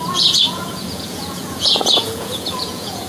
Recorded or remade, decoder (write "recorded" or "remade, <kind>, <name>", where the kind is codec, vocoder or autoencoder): remade, vocoder, Vocos